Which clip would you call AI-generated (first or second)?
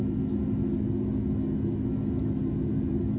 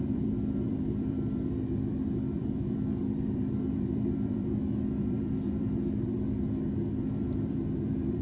second